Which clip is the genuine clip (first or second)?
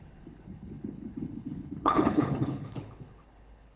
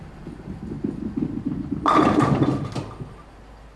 second